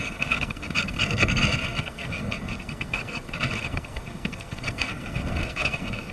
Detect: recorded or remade remade